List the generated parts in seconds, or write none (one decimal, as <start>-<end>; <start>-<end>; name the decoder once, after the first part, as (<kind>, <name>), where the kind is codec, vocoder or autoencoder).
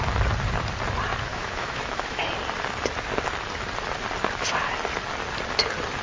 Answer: 1.3-2.2 (autoencoder, DAC-VAE)